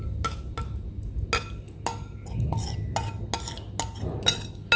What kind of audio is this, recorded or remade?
recorded